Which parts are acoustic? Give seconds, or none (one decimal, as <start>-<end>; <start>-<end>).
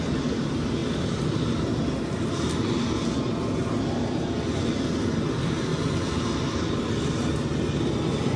0.0-8.4